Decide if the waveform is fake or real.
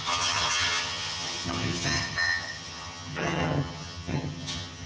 fake